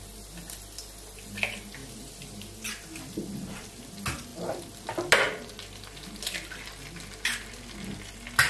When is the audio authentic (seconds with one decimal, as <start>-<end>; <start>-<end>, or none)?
0.0-1.8; 3.8-8.5